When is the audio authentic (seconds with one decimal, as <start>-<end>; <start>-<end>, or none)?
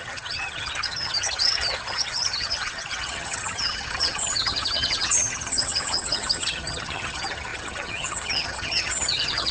none